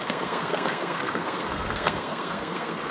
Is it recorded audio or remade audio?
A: remade